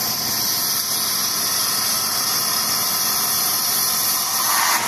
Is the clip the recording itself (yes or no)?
yes